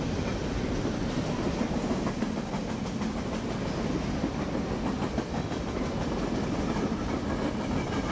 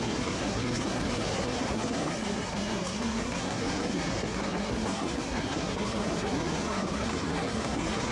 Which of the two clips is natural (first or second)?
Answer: first